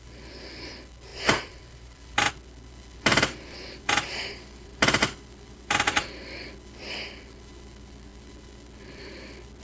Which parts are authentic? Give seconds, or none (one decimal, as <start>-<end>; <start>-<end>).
0.0-1.1; 2.3-3.1; 6.0-9.6